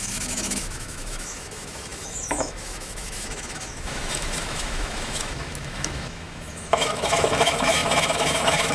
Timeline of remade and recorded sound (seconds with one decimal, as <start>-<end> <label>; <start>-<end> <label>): 0.0-8.7 remade